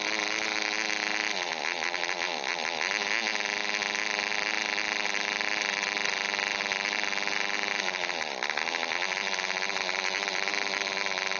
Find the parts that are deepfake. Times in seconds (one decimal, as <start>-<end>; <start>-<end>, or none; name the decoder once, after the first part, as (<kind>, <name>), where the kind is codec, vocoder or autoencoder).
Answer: none